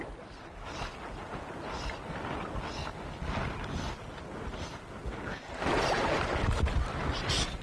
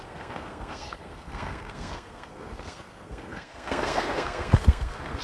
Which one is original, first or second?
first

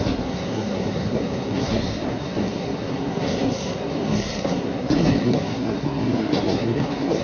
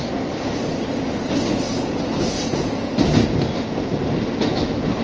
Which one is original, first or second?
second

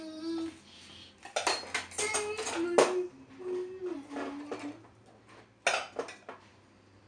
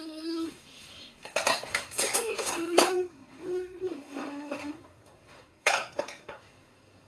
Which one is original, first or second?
first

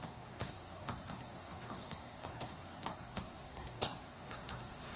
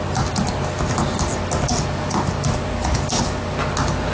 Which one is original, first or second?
second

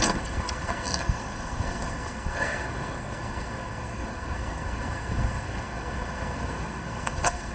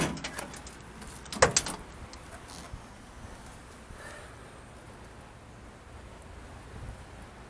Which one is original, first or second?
second